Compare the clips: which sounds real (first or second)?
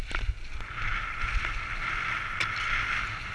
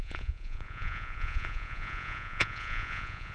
first